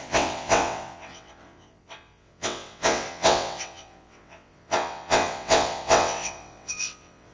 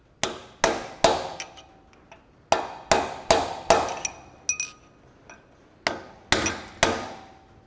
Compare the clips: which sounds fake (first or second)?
first